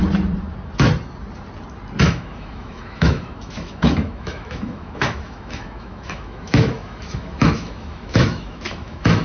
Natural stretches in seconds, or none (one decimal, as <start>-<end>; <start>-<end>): 0.0-2.0